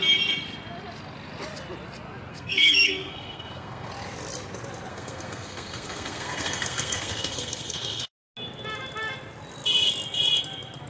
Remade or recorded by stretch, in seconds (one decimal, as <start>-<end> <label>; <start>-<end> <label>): 0.0-2.3 recorded; 2.3-3.9 remade; 3.9-4.9 recorded; 4.9-8.1 remade; 8.1-10.9 recorded